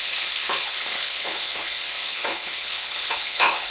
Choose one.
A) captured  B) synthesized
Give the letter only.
B